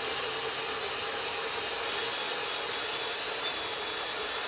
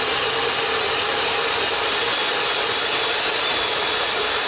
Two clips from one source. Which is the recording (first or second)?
first